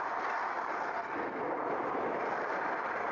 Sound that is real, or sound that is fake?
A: real